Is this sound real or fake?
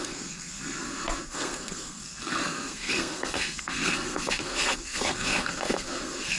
fake